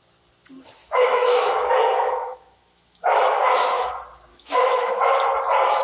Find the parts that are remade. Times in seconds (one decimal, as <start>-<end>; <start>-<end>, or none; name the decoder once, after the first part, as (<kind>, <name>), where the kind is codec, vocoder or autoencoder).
0.8-3.9 (autoencoder, DAC-VAE); 4.3-5.0